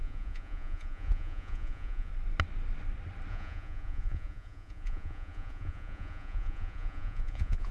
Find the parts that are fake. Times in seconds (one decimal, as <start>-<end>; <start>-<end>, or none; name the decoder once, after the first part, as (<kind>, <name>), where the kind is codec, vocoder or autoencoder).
0.0-2.1 (vocoder, Vocos); 3.3-7.7